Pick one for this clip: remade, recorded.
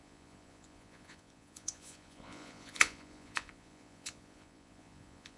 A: remade